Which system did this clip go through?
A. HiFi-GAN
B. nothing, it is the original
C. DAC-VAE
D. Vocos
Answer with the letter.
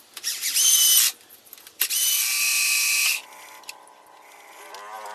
B